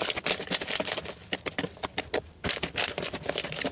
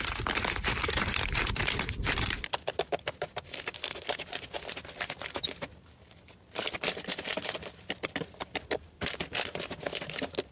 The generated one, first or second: second